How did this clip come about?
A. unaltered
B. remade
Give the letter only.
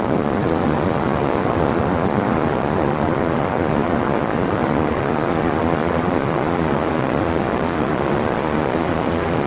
B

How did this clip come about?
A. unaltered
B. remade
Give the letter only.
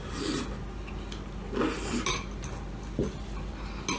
A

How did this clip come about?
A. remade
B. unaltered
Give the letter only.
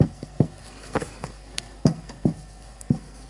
A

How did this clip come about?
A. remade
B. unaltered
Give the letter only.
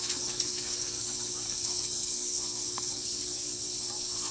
A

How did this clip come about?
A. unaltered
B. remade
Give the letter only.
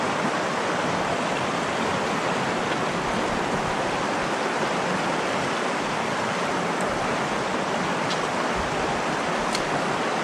A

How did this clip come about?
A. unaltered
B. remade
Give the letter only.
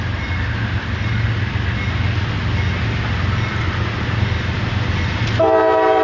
A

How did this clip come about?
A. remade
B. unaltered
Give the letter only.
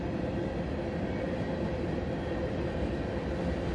B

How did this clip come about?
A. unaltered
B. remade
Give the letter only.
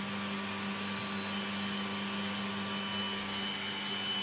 A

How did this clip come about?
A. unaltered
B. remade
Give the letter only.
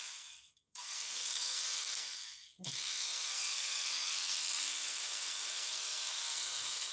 B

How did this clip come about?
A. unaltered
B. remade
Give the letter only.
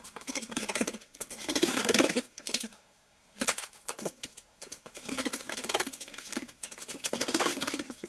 B